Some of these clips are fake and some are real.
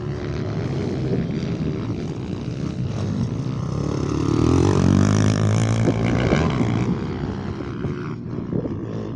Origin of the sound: real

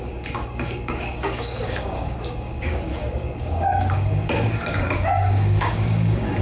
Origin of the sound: fake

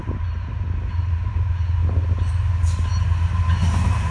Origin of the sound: real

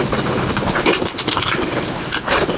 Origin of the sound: fake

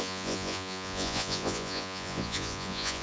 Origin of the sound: fake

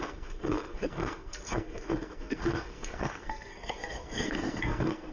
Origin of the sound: fake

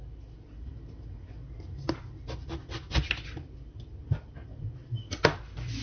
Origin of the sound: real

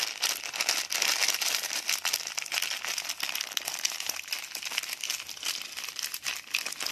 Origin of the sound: real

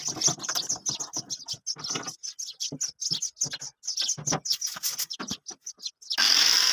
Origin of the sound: real